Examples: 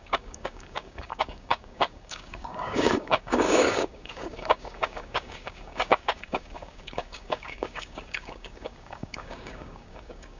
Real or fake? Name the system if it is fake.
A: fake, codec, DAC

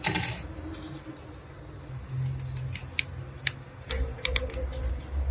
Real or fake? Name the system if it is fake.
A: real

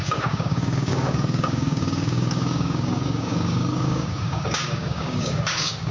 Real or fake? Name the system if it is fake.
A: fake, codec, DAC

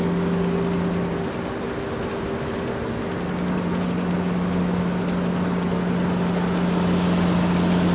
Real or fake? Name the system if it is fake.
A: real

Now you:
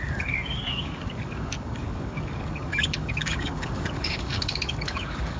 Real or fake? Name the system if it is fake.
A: fake, codec, DAC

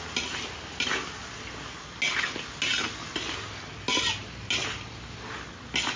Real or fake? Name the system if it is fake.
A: real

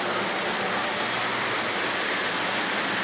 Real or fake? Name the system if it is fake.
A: real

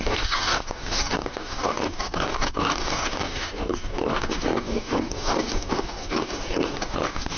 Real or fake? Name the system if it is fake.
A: fake, codec, DAC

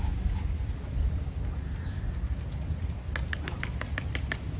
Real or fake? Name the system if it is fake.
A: real